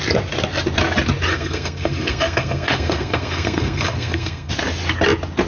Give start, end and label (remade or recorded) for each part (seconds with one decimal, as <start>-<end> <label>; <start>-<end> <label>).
0.0-1.3 recorded; 1.3-4.5 remade; 4.5-5.5 recorded